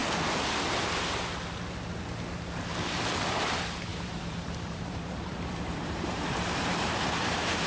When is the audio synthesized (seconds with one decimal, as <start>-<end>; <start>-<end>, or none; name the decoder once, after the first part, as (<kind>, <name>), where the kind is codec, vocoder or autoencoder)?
3.9-7.7 (vocoder, BigVGAN v2)